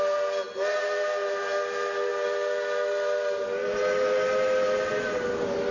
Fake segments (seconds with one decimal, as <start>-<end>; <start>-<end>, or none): none